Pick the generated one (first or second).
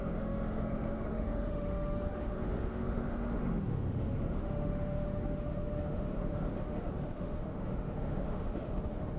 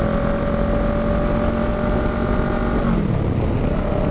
first